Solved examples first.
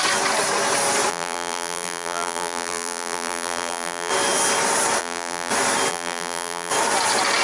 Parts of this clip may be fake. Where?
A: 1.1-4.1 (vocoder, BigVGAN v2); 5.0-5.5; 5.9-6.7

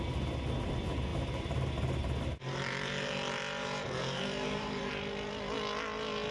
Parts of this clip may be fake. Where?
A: 1.1-4.9 (vocoder, BigVGAN v2)

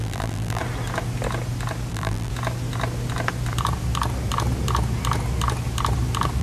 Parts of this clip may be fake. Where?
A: 0.0-0.6 (vocoder, BigVGAN v2); 1.9-2.3

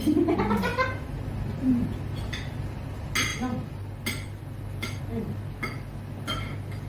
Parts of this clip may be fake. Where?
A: 3.3-5.0 (vocoder, BigVGAN v2)